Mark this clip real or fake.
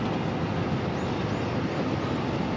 real